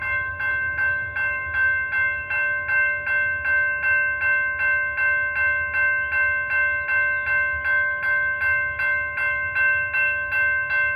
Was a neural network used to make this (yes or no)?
no